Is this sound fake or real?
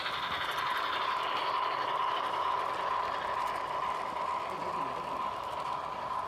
real